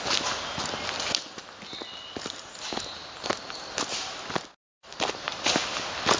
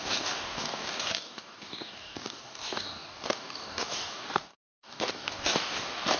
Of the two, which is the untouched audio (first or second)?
first